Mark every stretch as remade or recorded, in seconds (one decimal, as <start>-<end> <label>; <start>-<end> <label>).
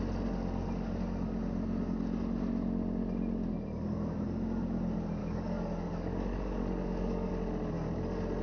0.0-5.2 recorded; 5.2-7.3 remade; 7.3-8.4 recorded